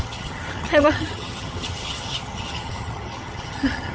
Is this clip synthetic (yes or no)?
yes